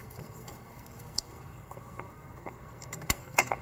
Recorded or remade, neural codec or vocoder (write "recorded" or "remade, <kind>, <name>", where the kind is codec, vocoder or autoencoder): remade, codec, SNAC